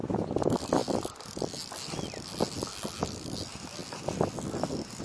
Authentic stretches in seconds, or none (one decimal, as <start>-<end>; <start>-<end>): 0.0-0.8; 1.3-5.0